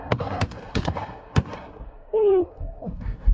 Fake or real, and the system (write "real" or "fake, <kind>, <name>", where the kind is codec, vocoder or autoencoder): fake, codec, SNAC